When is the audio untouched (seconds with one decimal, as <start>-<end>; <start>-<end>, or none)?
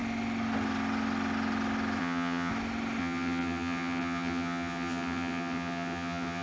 0.0-2.0; 2.5-3.0